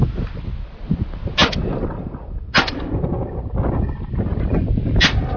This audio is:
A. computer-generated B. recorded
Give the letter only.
B